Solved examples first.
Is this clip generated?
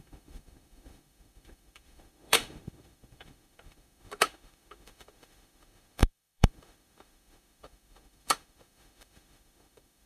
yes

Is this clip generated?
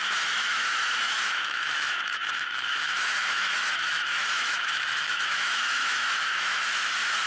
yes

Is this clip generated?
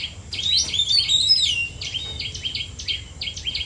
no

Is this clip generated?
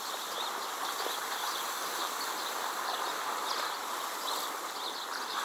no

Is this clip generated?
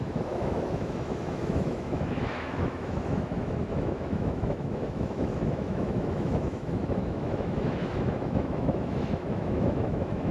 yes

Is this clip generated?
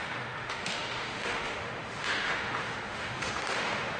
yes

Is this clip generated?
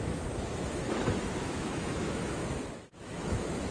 yes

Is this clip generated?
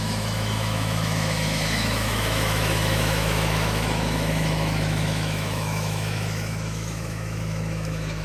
yes